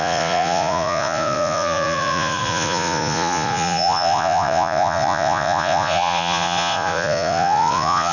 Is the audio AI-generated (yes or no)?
yes